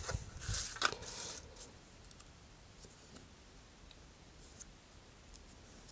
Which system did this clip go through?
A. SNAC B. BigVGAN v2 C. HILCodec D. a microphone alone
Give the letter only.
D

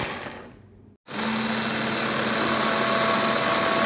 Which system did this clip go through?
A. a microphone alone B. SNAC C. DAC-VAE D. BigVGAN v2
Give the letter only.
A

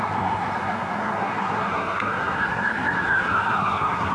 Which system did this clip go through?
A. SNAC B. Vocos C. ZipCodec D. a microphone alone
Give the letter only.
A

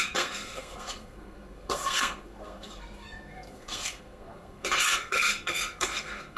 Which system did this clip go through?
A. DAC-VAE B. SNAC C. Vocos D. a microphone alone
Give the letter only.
B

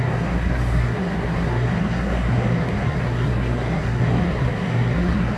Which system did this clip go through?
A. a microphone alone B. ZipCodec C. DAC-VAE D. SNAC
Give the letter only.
D